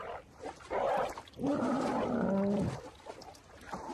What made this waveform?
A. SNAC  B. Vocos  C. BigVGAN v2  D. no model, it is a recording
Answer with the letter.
C